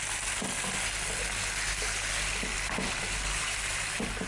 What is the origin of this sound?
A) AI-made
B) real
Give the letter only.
B